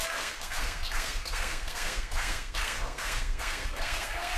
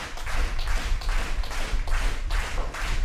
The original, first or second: second